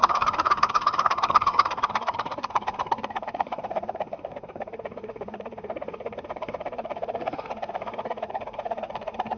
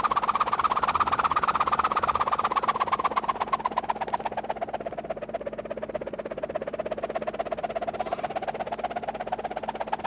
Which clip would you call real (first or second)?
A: second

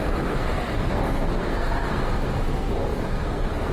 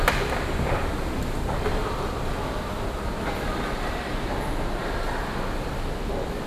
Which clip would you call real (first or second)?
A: second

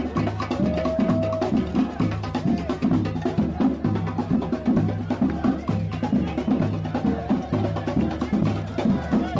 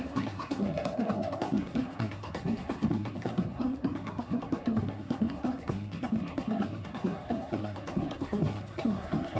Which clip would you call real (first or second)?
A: first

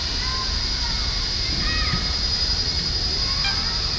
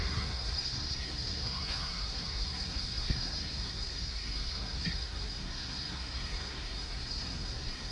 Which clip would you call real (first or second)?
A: first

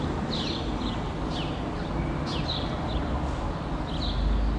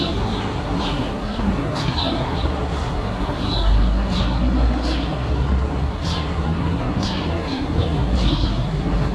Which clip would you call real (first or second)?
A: first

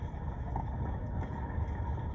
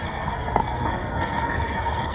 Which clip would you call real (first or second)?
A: first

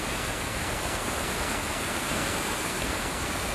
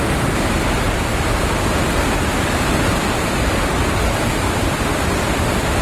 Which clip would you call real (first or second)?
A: second